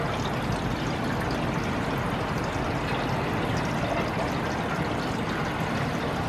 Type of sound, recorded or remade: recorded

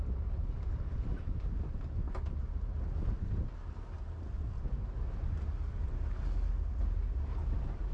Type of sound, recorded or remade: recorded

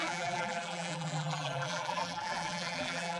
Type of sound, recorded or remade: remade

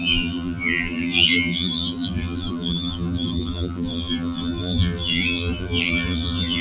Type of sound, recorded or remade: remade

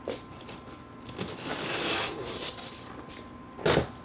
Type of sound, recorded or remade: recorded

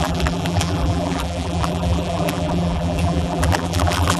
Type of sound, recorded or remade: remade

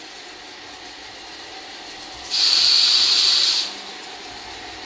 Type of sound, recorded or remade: recorded